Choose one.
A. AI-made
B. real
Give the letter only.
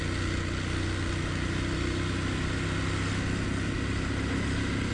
B